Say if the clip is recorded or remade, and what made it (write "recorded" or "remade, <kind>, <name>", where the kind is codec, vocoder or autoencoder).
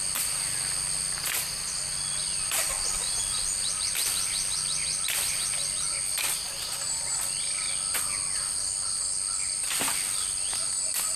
recorded